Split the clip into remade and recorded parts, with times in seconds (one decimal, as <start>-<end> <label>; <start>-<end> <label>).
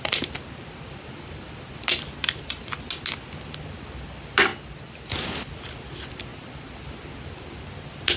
0.0-8.2 recorded